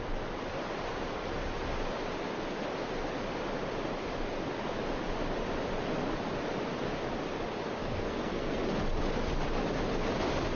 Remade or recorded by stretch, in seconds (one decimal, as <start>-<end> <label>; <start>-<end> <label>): 0.0-7.8 recorded; 7.8-8.6 remade; 8.6-10.6 recorded